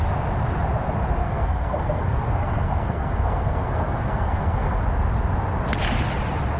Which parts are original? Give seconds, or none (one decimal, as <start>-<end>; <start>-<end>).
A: 0.0-1.2; 4.8-6.6